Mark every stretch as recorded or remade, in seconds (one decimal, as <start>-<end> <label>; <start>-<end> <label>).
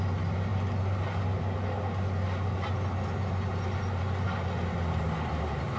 0.0-5.8 recorded